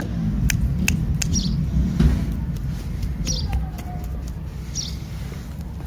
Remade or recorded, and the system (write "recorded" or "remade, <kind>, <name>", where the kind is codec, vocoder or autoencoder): recorded